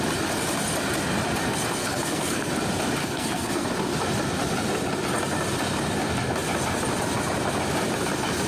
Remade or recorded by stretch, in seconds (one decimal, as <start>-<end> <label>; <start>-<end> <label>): 0.0-1.8 recorded; 1.8-2.5 remade; 2.5-3.0 recorded; 3.0-3.7 remade; 3.7-8.5 recorded